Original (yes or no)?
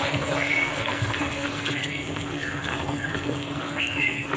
no